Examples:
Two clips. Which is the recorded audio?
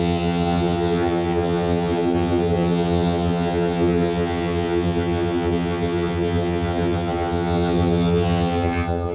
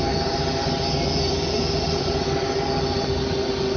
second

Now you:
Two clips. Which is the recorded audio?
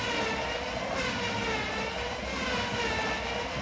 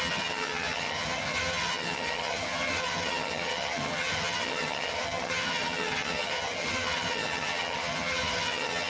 first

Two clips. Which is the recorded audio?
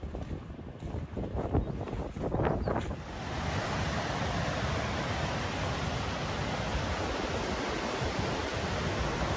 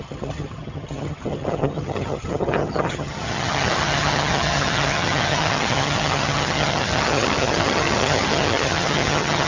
first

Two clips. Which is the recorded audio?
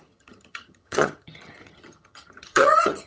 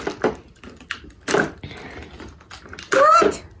second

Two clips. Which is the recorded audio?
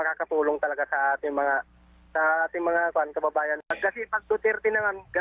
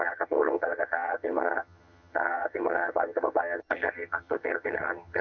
first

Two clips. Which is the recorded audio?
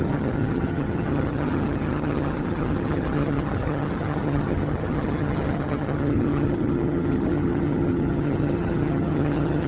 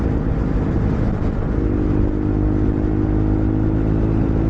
second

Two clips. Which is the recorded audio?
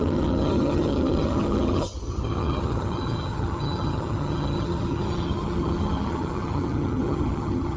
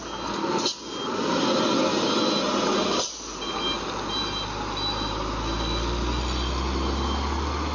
second